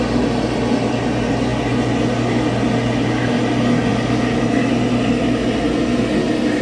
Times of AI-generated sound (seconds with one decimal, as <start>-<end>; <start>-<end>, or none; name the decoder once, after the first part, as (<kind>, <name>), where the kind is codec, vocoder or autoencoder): none